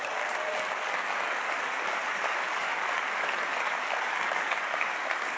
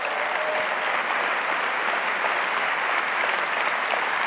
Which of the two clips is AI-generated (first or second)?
first